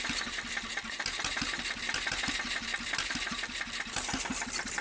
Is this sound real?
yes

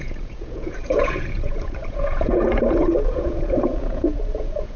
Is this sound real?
no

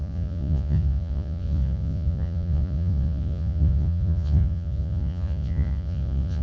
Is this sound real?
no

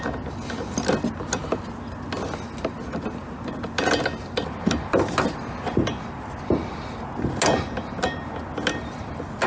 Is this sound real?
yes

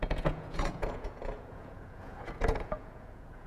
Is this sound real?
no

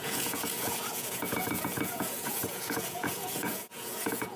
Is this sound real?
no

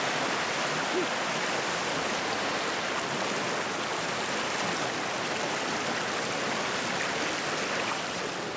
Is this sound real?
yes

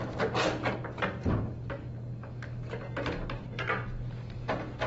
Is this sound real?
yes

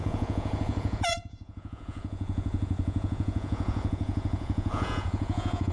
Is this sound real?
no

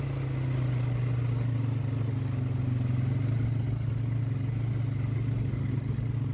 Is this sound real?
yes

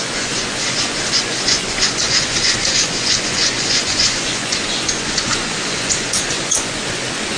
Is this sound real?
no